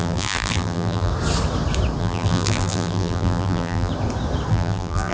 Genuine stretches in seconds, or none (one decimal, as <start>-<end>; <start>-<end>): 1.1-2.0; 3.9-4.5